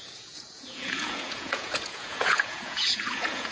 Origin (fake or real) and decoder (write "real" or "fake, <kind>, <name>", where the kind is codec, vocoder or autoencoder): fake, vocoder, Vocos